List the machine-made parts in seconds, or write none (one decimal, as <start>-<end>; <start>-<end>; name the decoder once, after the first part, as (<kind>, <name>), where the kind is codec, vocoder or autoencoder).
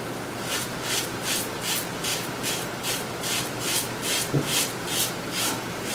none